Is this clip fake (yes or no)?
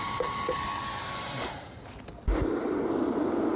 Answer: no